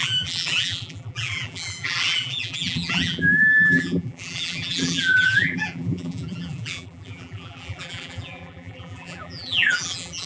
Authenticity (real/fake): fake